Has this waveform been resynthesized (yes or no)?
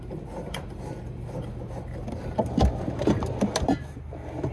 no